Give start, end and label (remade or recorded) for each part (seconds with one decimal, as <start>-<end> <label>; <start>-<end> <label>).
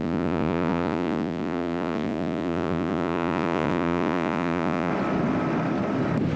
0.0-4.9 remade; 4.9-6.4 recorded